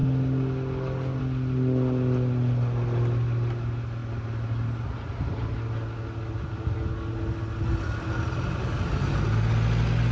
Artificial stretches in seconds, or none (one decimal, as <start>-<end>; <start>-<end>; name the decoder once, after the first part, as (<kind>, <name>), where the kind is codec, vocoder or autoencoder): none